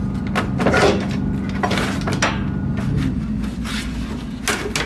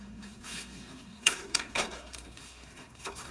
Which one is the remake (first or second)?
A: second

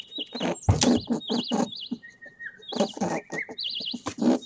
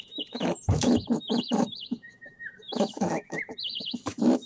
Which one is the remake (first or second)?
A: second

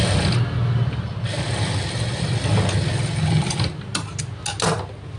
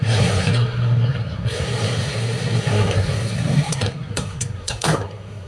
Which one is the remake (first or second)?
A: second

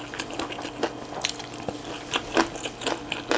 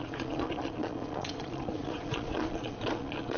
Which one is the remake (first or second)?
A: second